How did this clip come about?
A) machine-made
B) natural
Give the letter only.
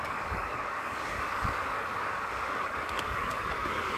A